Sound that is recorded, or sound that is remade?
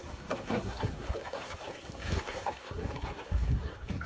remade